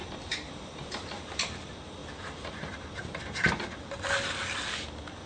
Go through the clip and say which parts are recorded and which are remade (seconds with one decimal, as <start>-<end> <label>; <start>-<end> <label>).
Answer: 0.0-0.9 remade; 0.9-2.0 recorded; 2.0-3.2 remade; 3.2-5.3 recorded